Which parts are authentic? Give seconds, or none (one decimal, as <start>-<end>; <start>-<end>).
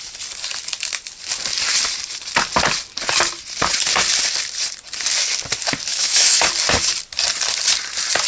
0.0-5.9; 6.5-8.3